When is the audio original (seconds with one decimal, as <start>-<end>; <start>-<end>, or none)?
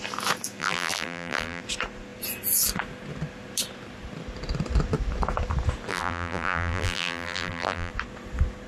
0.0-0.6; 1.6-5.9; 7.9-8.7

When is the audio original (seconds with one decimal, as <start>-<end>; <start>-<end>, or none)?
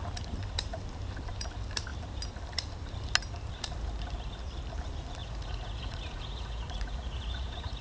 0.0-5.2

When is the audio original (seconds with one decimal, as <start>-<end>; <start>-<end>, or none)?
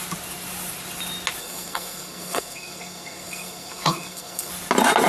0.0-1.4; 4.5-5.1